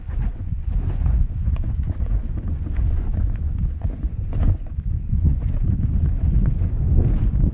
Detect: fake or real fake